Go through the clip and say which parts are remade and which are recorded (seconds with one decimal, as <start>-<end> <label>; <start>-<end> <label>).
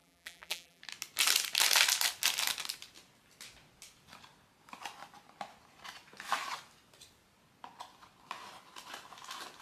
0.0-0.8 remade; 0.8-9.6 recorded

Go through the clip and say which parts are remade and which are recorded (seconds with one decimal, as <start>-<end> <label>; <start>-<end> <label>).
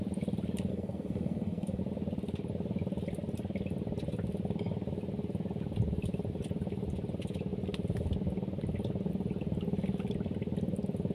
0.0-0.7 recorded; 0.7-1.8 remade; 1.8-11.1 recorded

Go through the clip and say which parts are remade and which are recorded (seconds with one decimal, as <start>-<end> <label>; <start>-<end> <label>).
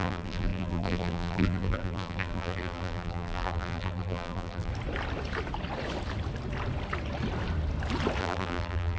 0.0-4.7 remade; 4.7-8.2 recorded; 8.2-9.0 remade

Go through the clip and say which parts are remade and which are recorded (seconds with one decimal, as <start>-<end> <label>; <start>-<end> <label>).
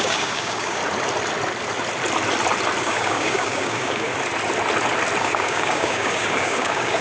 0.0-0.8 remade; 0.8-2.8 recorded; 2.8-4.1 remade; 4.1-5.2 recorded; 5.2-7.0 remade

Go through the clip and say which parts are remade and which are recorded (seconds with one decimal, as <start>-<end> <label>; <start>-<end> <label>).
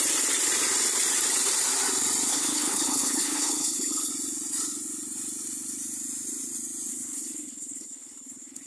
0.0-2.3 recorded; 2.3-4.1 remade; 4.1-6.9 recorded; 6.9-8.7 remade